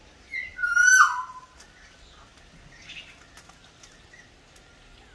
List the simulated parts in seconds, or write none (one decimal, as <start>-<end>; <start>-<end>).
none